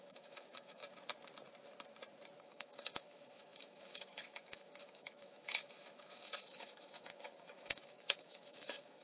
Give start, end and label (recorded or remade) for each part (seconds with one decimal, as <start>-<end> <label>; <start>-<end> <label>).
0.0-0.8 remade; 0.8-2.4 recorded; 2.4-9.0 remade